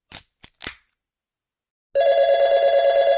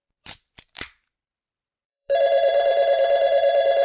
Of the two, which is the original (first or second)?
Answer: first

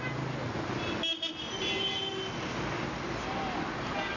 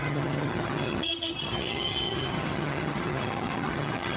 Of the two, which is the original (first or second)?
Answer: first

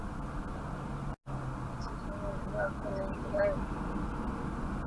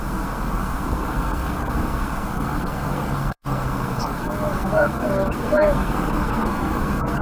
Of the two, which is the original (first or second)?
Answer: first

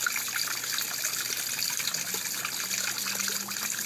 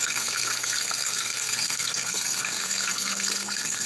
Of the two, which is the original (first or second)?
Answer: first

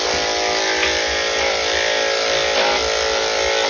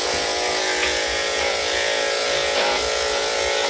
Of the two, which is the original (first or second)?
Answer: first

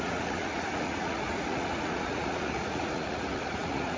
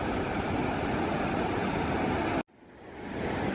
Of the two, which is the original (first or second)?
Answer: second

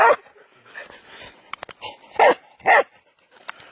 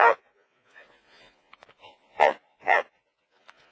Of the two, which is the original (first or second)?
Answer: first